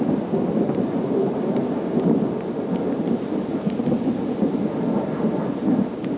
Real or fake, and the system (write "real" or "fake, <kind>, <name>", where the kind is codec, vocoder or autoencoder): real